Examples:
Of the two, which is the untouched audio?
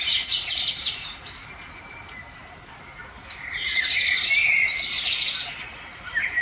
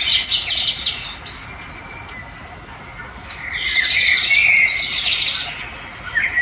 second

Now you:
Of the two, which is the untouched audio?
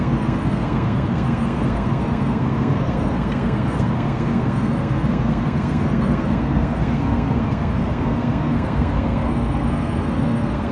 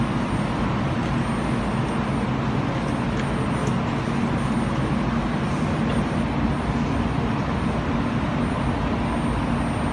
second